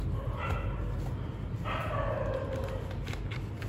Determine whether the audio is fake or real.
real